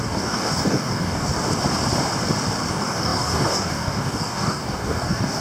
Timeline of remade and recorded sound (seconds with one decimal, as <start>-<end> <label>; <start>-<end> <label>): 0.0-1.3 remade; 1.3-2.7 recorded; 2.7-5.4 remade